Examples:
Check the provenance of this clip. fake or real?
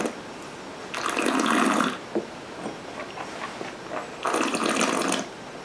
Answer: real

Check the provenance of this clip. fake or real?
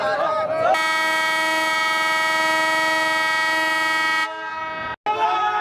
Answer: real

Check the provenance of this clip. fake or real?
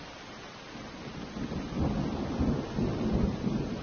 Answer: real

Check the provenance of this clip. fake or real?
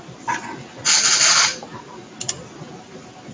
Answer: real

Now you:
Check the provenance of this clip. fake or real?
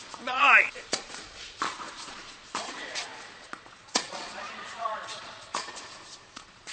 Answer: fake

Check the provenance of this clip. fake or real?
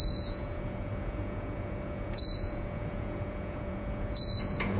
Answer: fake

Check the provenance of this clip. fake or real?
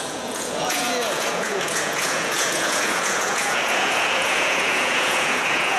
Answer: fake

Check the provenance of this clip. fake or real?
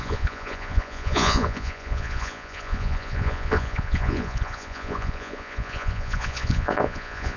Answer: fake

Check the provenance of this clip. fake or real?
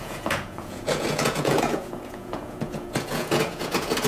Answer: fake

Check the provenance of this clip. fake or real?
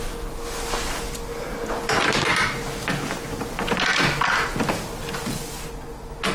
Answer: real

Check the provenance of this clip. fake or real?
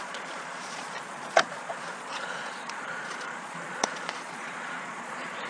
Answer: fake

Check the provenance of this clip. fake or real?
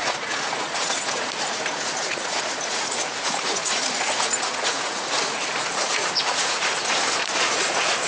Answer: fake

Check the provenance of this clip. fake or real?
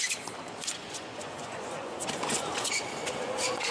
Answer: fake